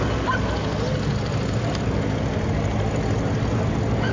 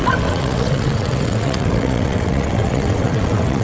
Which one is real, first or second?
first